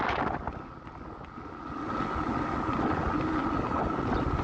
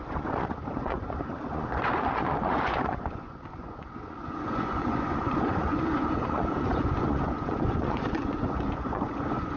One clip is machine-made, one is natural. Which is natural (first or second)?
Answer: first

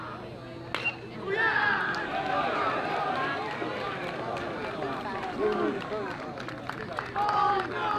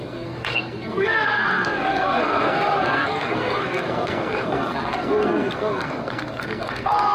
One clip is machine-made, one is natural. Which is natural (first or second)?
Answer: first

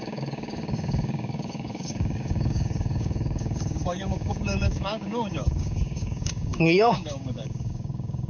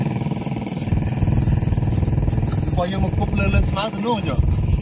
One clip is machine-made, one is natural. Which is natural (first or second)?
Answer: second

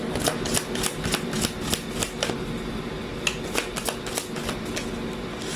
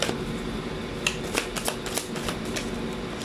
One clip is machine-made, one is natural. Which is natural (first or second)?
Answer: first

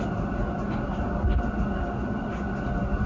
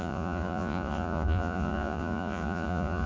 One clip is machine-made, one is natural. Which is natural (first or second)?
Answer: first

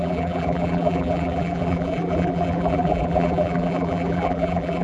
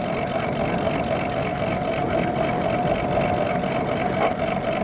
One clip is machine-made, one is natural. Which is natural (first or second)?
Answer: second